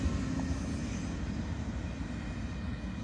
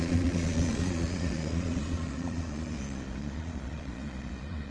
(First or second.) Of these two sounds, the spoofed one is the second